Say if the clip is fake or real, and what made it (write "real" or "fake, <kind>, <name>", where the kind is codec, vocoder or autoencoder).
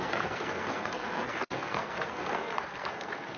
fake, codec, SNAC